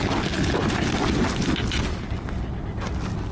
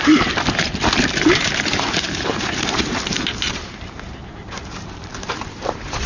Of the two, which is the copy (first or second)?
second